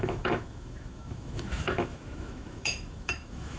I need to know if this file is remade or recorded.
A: remade